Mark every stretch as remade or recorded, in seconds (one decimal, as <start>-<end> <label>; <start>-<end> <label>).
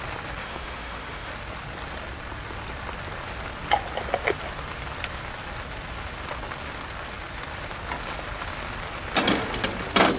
0.0-0.4 recorded; 0.4-1.3 remade; 1.3-10.2 recorded